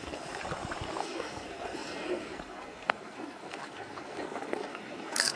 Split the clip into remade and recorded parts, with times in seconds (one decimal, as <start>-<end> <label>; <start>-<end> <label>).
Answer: 0.0-0.4 remade; 0.4-1.0 recorded; 1.0-5.4 remade